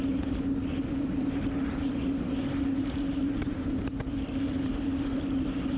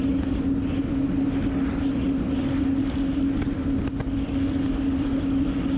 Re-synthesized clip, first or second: first